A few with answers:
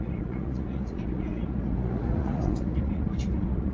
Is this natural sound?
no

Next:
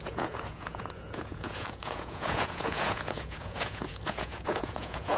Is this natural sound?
no